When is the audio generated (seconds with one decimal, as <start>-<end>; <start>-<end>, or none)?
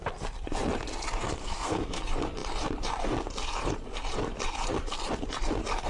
1.4-2.0